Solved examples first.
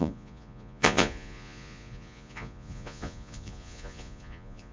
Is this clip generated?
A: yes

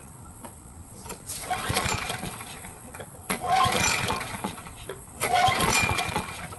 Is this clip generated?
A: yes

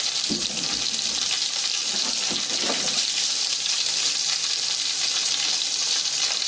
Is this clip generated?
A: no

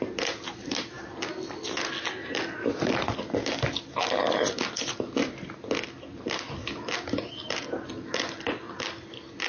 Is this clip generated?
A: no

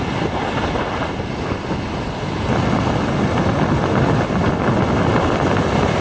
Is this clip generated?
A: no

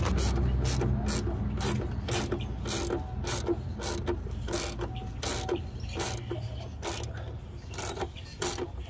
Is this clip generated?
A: no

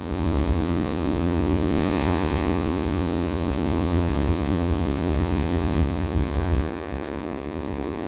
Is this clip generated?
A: yes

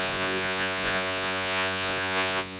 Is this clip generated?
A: yes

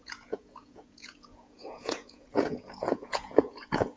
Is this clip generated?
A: yes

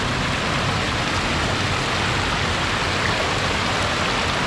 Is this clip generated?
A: no